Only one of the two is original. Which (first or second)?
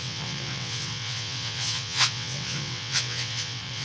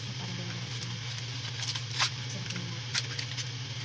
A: second